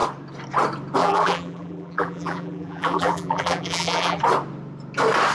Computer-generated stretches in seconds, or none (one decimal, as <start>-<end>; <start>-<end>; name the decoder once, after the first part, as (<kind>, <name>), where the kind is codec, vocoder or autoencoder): 1.0-4.2 (vocoder, BigVGAN v2)